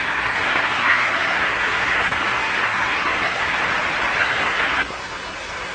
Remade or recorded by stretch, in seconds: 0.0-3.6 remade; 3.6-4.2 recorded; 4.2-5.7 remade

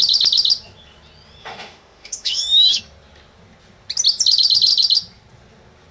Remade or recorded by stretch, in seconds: 0.0-1.4 recorded; 1.4-2.8 remade; 2.8-5.9 recorded

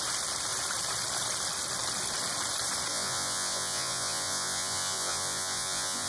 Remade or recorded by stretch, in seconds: 0.0-2.9 recorded; 2.9-6.1 remade

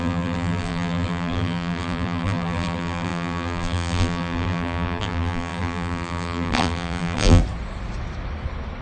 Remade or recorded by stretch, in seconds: 0.0-7.4 remade; 7.4-8.8 recorded